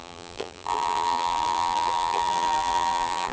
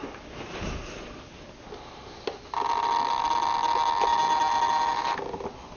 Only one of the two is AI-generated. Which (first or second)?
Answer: first